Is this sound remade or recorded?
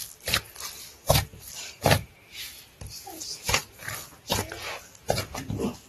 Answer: recorded